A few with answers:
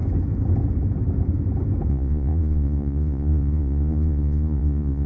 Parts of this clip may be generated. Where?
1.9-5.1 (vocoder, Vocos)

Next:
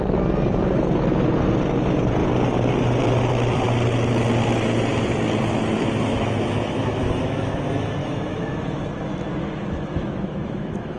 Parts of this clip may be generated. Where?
6.1-7.6 (autoencoder, DAC-VAE); 8.0-8.8; 9.4-11.0

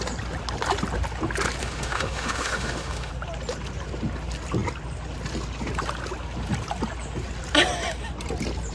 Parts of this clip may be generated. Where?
1.6-3.1 (autoencoder, DAC-VAE)

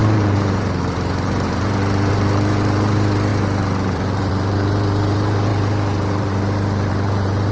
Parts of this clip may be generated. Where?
0.0-7.5 (vocoder, BigVGAN v2)